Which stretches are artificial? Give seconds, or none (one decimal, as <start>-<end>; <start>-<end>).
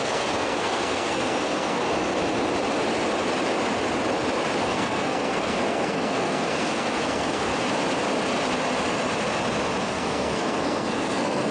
0.0-1.8; 4.6-7.5; 9.8-11.5